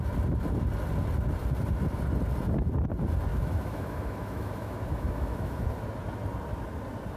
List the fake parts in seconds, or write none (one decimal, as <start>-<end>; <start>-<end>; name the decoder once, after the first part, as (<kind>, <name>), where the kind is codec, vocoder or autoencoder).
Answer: 3.3-5.6 (autoencoder, DAC-VAE)